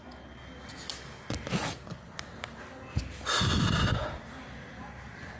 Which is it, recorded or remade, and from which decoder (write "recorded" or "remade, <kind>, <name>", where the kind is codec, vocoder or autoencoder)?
recorded